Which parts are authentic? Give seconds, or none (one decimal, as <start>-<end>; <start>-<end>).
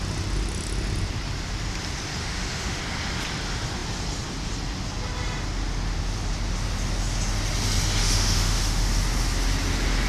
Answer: 0.0-2.2; 2.8-8.0; 8.9-10.1